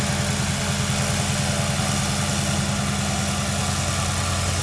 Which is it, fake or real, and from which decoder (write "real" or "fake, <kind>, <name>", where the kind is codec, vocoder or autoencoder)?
real